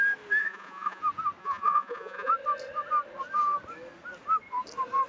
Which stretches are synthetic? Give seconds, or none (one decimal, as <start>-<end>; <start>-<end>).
0.4-1.0; 1.4-2.3